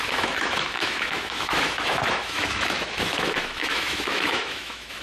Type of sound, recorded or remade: remade